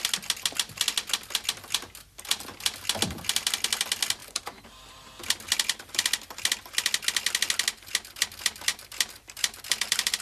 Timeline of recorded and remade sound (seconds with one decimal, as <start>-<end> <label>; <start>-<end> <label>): 0.0-4.2 recorded; 4.2-5.2 remade; 5.2-8.7 recorded; 8.7-10.2 remade